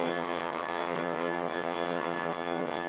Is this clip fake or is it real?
fake